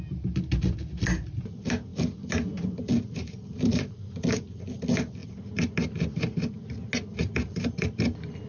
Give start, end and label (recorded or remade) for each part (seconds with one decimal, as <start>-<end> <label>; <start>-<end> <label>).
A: 0.0-7.2 recorded; 7.2-7.7 remade; 7.7-8.5 recorded